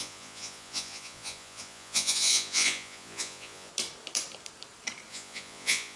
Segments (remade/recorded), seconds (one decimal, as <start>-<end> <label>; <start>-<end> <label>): 0.0-3.7 remade; 3.7-5.1 recorded; 5.1-6.0 remade

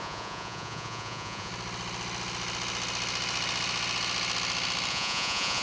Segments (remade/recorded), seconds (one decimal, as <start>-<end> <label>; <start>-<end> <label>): 0.0-1.5 remade; 1.5-4.9 recorded; 4.9-5.6 remade

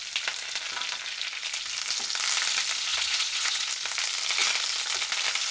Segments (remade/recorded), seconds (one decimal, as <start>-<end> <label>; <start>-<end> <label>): 0.0-2.9 recorded; 2.9-3.7 remade; 3.7-5.5 recorded

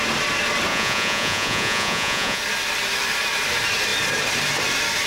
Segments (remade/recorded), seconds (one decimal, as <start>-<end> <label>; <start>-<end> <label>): 0.0-0.7 recorded; 0.7-2.4 remade; 2.4-5.1 recorded

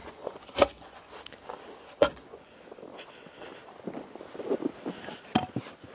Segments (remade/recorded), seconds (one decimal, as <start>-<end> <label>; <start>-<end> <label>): 0.0-1.1 remade; 1.1-1.8 recorded; 1.8-2.5 remade; 2.5-5.9 recorded